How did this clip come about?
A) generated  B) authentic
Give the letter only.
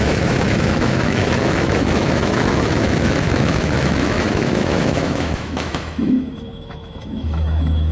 A